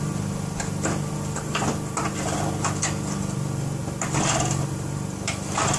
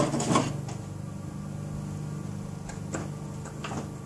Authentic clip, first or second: second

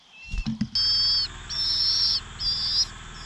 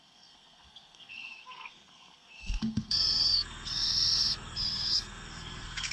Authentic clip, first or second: first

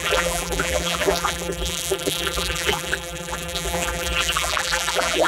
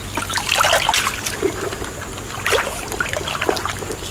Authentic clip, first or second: second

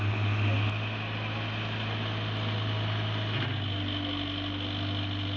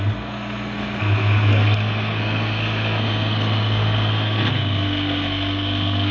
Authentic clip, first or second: first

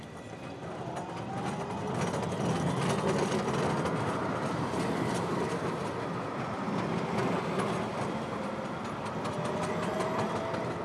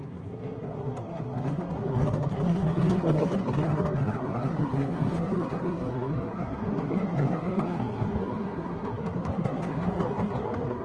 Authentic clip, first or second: first